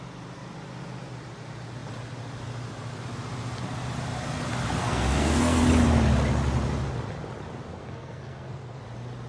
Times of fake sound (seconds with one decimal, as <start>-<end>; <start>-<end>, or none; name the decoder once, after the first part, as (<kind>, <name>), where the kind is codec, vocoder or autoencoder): 4.8-5.6 (codec, SNAC); 7.7-8.8